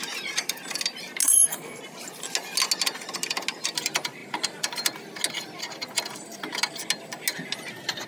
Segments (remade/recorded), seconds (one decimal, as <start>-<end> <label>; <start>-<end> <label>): 0.0-1.2 recorded; 1.2-1.8 remade; 1.8-8.1 recorded